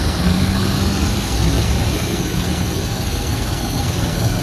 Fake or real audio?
fake